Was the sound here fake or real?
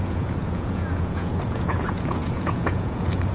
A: fake